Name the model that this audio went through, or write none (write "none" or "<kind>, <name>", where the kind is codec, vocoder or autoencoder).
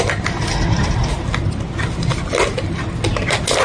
none